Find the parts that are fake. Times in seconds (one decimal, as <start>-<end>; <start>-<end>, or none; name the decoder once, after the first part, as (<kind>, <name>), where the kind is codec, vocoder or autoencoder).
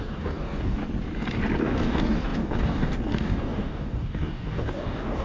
0.0-0.8 (codec, DAC); 1.6-5.2